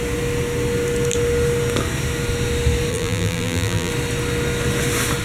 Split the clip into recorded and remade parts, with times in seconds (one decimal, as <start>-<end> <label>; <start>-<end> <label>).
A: 0.0-2.9 recorded; 2.9-3.9 remade; 3.9-5.2 recorded